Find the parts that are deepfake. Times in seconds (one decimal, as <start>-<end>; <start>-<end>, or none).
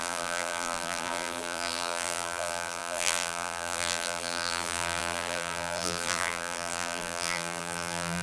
0.0-8.2